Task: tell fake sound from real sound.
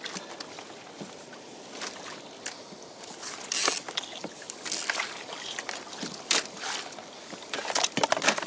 real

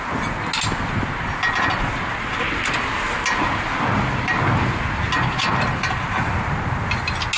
real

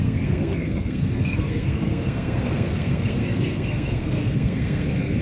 fake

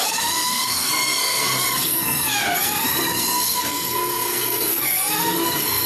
fake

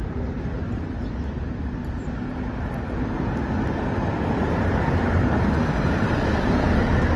real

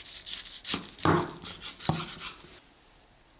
real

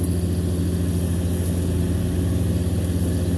real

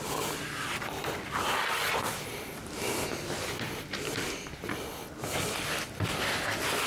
real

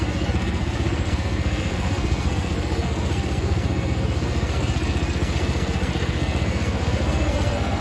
fake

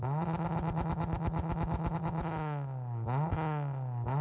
real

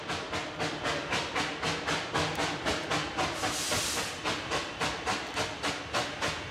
real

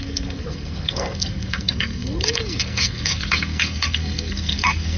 fake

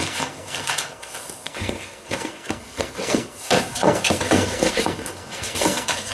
fake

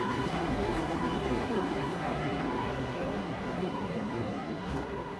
fake